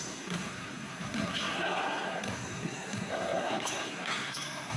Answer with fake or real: fake